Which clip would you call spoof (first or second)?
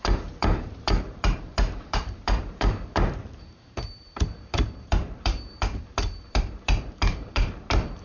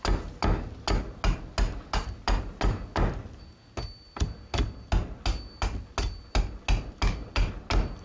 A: first